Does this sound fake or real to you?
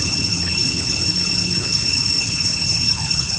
fake